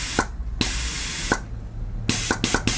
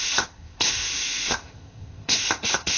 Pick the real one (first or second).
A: first